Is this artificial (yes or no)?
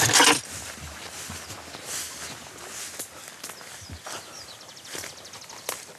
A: no